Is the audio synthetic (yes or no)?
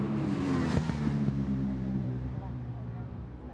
yes